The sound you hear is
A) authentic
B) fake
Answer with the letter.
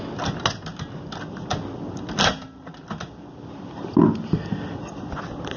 A